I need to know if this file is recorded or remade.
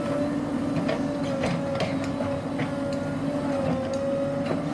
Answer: recorded